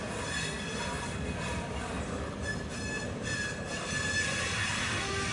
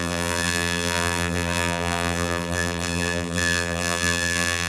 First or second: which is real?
first